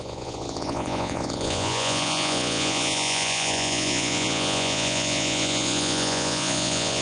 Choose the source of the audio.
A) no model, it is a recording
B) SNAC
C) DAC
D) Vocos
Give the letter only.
D